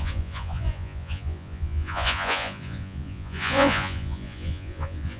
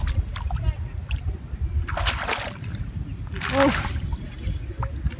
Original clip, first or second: second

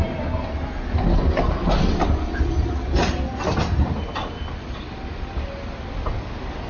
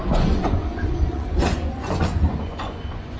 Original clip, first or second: first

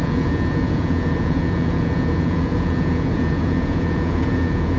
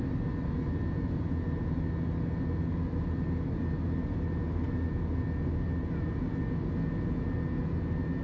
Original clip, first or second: second